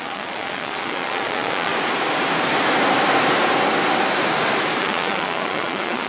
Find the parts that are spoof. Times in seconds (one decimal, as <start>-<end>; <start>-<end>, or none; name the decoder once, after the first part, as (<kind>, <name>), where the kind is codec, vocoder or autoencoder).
0.0-1.7 (vocoder, Vocos); 4.8-6.1